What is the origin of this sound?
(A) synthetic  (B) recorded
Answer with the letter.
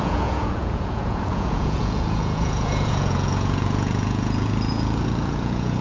A